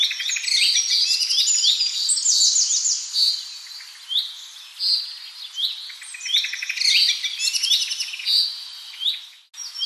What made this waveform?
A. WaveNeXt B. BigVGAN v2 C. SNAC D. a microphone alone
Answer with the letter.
D